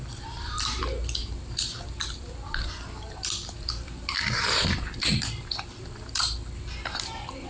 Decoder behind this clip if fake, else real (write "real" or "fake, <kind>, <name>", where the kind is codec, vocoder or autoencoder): fake, vocoder, BigVGAN v2